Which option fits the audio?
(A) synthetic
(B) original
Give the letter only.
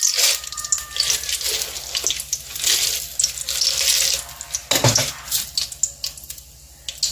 B